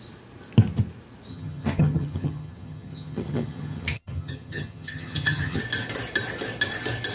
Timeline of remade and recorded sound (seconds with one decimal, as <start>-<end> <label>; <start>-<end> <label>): 0.0-1.3 recorded; 1.3-5.6 remade; 5.6-7.1 recorded